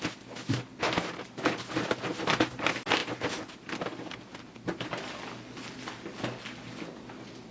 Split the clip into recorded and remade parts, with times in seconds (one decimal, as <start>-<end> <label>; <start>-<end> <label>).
0.0-7.5 recorded